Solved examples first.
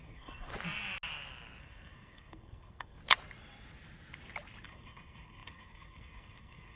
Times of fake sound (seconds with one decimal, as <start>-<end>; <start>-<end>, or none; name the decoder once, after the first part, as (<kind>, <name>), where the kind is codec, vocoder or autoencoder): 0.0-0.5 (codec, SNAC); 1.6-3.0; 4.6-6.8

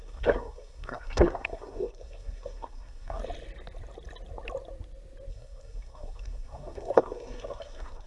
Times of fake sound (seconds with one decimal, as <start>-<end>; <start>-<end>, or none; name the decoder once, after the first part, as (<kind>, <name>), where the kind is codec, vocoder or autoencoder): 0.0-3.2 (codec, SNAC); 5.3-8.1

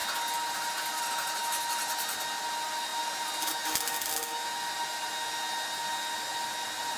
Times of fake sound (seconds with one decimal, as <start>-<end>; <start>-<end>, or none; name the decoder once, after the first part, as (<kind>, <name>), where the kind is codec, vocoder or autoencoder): none

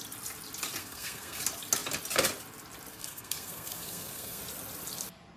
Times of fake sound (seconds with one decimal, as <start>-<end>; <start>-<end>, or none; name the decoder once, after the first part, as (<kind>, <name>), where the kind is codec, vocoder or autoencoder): 0.8-1.4 (codec, SNAC); 2.9-4.4

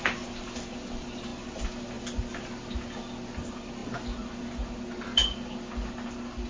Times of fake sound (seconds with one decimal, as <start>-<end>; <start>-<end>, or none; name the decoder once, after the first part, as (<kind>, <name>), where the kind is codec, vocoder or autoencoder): none